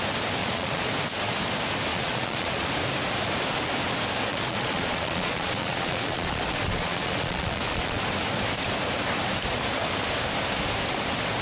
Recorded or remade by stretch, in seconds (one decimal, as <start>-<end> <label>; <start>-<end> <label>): 0.0-0.4 recorded; 0.4-0.9 remade; 0.9-1.9 recorded; 1.9-2.7 remade; 2.7-4.3 recorded; 4.3-8.0 remade; 8.0-11.4 recorded